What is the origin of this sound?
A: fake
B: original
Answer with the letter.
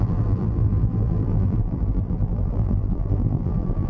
A